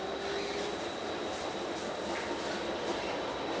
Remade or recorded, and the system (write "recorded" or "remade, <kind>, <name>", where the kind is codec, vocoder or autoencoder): recorded